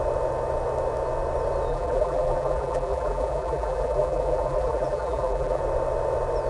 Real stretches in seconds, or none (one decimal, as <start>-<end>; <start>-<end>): 0.0-1.7; 5.6-6.5